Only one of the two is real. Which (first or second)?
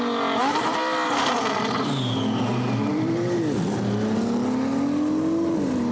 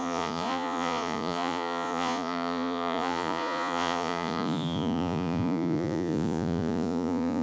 first